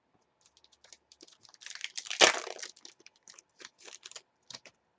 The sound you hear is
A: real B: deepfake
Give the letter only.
A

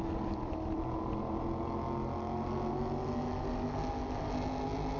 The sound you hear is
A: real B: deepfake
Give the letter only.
A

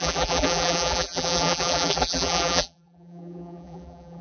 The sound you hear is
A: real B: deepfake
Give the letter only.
B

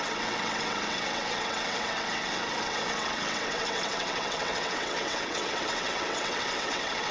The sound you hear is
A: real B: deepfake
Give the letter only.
B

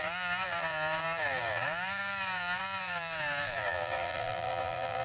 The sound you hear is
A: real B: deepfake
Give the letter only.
B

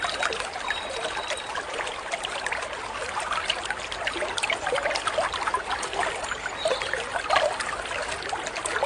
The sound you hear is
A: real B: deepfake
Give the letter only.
A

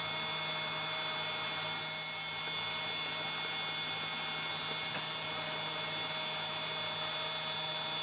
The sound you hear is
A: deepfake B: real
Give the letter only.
B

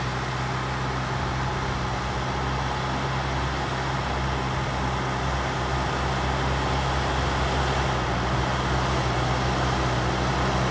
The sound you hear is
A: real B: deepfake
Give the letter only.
A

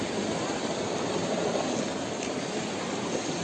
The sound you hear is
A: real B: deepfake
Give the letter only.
A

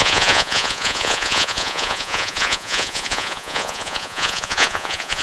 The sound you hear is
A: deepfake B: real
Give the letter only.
A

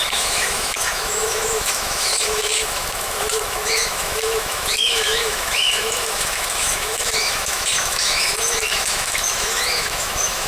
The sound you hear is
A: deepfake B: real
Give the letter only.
A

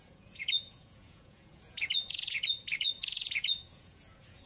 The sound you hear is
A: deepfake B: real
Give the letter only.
A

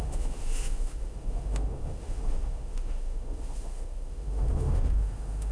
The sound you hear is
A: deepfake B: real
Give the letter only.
A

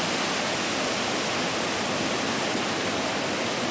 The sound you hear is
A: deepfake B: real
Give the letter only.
B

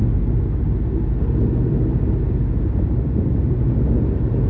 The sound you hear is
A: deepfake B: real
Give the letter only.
B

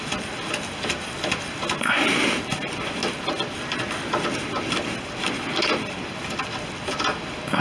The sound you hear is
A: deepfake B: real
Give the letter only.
B